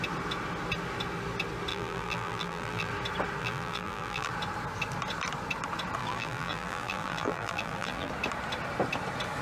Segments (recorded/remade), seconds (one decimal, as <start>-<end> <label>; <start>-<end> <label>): 0.0-1.7 recorded; 1.7-2.9 remade; 2.9-3.4 recorded; 3.4-4.3 remade; 4.3-6.0 recorded; 6.0-8.1 remade; 8.1-9.4 recorded